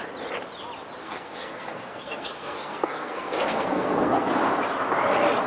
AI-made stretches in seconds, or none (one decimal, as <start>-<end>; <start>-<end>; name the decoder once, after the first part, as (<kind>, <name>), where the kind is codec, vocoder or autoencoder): 1.0-4.3 (codec, SNAC)